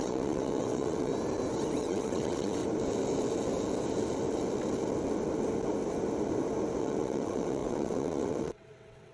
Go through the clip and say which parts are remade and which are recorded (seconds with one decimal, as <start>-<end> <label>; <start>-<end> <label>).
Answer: 0.0-1.1 remade; 1.1-1.8 recorded; 1.8-2.6 remade; 2.6-6.8 recorded; 6.8-9.1 remade